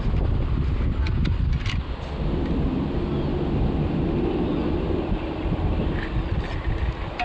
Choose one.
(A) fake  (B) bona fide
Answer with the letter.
B